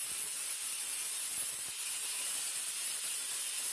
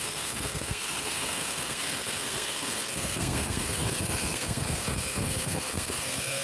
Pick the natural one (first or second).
first